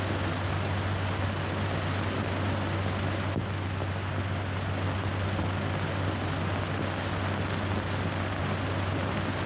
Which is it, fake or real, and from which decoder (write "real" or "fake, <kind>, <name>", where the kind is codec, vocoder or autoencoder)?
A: real